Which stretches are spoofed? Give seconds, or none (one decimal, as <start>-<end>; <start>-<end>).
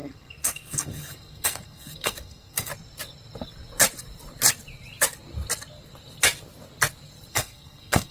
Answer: 0.0-2.7; 7.3-8.1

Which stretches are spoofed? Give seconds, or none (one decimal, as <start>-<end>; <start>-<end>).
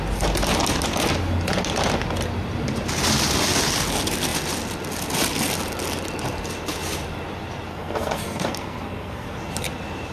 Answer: 7.7-9.5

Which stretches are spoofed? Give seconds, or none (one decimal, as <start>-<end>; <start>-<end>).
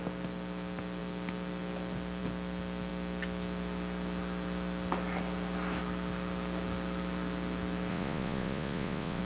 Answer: 7.9-9.2